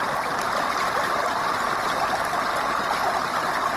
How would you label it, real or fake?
real